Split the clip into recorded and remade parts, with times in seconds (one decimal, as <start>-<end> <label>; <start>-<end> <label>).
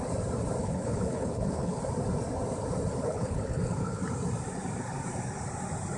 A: 0.0-0.6 recorded; 0.6-1.8 remade; 1.8-3.0 recorded; 3.0-4.0 remade; 4.0-6.0 recorded